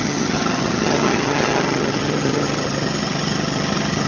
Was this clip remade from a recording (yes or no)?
yes